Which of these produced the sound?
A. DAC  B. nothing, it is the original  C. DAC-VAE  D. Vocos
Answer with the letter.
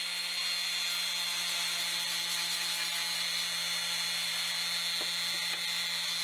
B